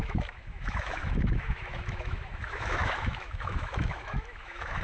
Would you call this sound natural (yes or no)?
no